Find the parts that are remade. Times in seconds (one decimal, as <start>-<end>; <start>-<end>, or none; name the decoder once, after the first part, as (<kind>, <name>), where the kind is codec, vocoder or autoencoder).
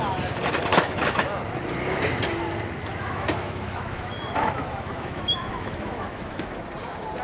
0.7-1.3 (autoencoder, DAC-VAE); 2.9-6.5